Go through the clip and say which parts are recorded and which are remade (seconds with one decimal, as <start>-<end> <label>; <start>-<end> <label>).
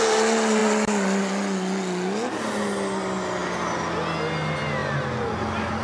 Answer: 0.0-5.8 recorded